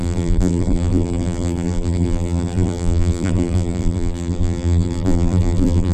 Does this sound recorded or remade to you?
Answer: remade